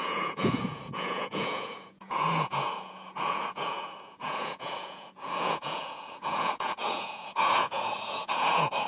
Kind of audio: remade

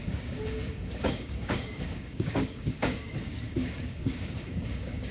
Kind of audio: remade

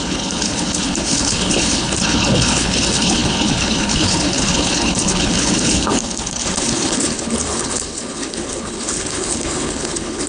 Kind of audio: remade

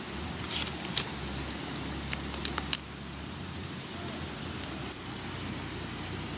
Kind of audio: recorded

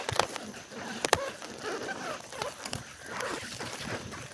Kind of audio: recorded